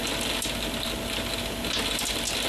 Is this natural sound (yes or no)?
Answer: yes